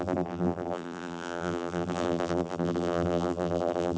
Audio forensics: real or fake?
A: fake